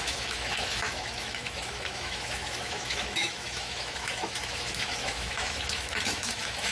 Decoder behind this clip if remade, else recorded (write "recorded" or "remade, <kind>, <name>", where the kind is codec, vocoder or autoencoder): remade, autoencoder, DAC-VAE